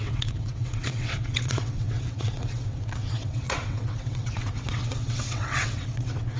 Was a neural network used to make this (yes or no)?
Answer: yes